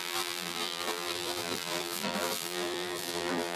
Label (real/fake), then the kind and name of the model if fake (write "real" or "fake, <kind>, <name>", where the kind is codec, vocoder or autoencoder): fake, vocoder, BigVGAN v2